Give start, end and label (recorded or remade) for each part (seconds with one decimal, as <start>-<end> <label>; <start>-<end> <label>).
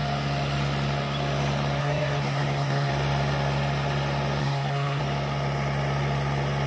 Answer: 0.0-1.8 recorded; 1.8-2.9 remade; 2.9-4.4 recorded; 4.4-5.0 remade; 5.0-6.7 recorded